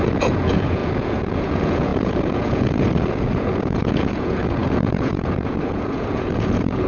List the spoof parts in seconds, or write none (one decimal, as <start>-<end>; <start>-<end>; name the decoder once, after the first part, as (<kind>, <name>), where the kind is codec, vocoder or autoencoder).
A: 0.0-6.9 (vocoder, Vocos)